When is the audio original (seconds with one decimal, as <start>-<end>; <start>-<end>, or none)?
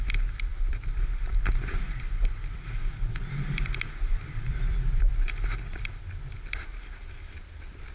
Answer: none